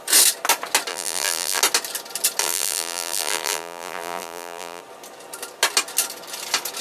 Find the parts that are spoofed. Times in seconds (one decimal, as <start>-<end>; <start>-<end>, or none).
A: 0.9-1.6; 2.4-4.8